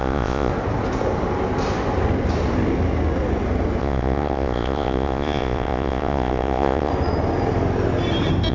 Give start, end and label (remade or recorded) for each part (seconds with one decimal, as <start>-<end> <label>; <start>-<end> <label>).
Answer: 0.0-0.5 remade; 0.5-3.8 recorded; 3.8-6.9 remade; 6.9-8.5 recorded